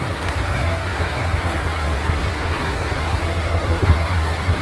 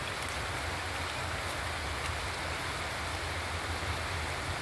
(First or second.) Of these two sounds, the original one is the second